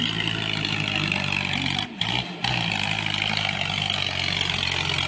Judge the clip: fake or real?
real